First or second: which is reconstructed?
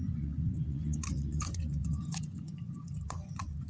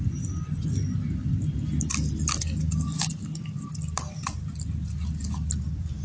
first